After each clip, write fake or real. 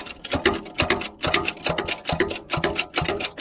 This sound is real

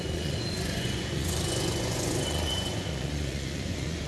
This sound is fake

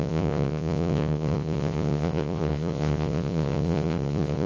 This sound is fake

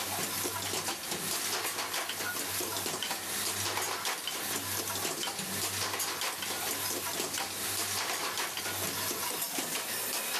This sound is real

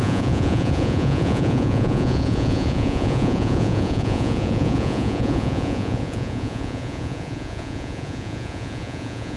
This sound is fake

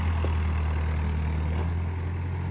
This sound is real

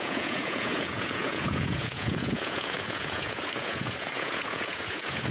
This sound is fake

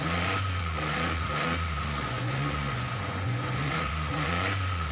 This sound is fake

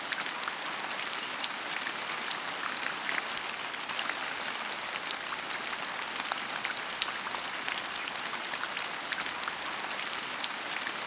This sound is real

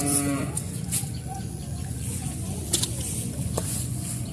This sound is fake